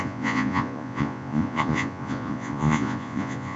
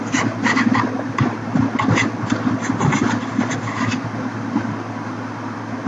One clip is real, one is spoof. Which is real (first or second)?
second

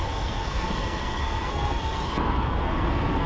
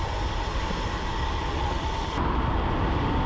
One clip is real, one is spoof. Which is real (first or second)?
second